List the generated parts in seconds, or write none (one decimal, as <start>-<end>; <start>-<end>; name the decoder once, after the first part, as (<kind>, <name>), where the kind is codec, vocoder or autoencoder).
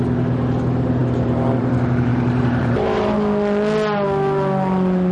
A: 2.1-3.1 (vocoder, BigVGAN v2)